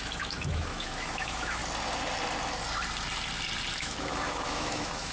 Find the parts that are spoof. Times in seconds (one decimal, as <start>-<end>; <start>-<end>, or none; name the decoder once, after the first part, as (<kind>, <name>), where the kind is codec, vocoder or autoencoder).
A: 0.0-1.6 (autoencoder, DAC-VAE); 3.8-5.1